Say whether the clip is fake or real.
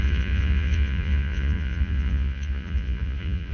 fake